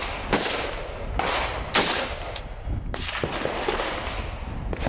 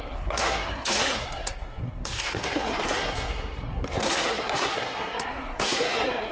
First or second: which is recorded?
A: first